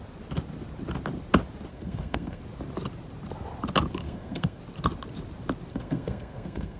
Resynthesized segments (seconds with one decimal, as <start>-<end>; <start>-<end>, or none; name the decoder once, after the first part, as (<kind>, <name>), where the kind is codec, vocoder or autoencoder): 1.7-2.4 (codec, SNAC); 4.0-4.6; 5.7-6.8